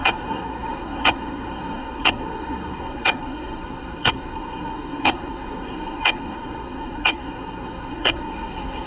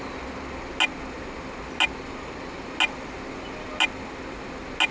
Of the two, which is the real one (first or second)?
second